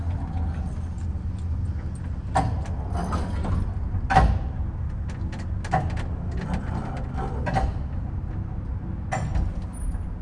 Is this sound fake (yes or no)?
no